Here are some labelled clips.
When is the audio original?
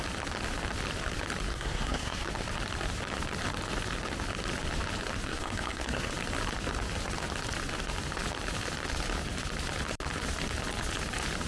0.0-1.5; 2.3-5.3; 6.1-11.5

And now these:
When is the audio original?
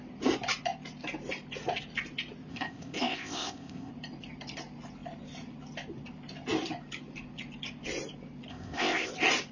0.0-2.5; 3.9-8.5; 9.1-9.5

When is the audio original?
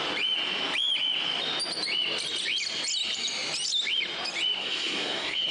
0.0-4.6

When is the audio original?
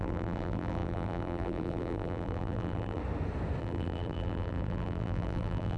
3.0-3.6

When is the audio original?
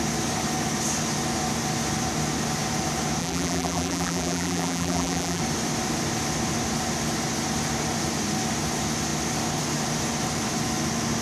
0.0-3.2; 5.4-11.2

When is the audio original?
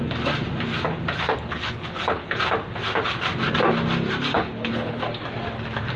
0.0-1.5; 2.4-4.3; 5.0-6.0